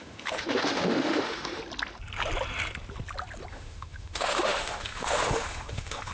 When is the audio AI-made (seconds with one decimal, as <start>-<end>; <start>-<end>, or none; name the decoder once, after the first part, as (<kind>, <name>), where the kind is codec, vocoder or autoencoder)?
0.0-1.6 (autoencoder, DAC-VAE); 3.5-6.1